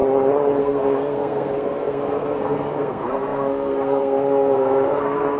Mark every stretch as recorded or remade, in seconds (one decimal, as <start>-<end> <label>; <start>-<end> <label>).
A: 0.0-0.6 recorded; 0.6-5.4 remade